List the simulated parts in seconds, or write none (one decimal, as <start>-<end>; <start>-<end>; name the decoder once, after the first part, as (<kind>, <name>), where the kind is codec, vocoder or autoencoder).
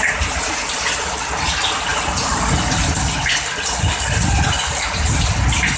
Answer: none